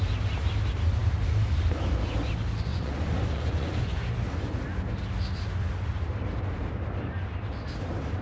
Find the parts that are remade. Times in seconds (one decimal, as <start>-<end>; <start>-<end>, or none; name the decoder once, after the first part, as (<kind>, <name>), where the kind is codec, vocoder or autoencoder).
2.7-4.0 (vocoder, Vocos)